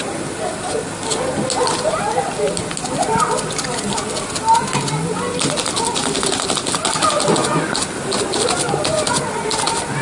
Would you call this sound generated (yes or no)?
no